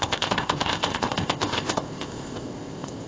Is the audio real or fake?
fake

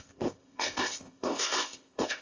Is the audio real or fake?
fake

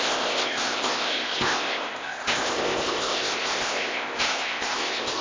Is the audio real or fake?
fake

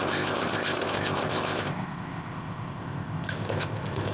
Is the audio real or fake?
fake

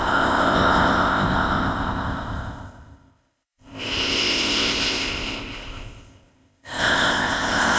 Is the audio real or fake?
fake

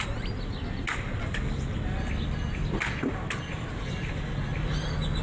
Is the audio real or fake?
real